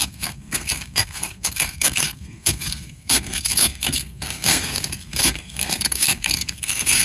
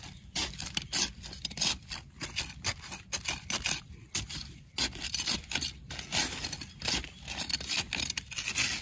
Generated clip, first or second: first